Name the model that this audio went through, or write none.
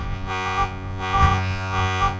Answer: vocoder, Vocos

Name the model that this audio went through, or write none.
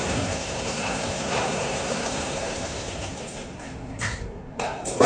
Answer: codec, SNAC